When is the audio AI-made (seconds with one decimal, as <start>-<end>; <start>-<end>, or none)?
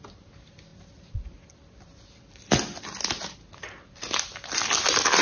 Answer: none